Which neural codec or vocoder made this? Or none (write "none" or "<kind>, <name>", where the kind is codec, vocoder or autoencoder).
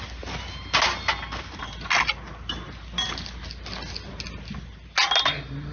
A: none